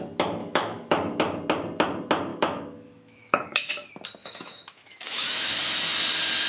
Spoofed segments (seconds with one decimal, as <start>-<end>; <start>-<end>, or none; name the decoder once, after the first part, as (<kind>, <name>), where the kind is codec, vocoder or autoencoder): 0.4-1.2 (autoencoder, DAC-VAE); 2.3-3.7; 4.2-5.6